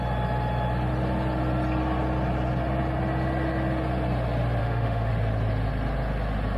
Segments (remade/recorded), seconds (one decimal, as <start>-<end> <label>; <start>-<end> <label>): 0.0-4.6 recorded; 4.6-5.1 remade; 5.1-6.6 recorded